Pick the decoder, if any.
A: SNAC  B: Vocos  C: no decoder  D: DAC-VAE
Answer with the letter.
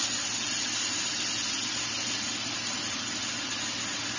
C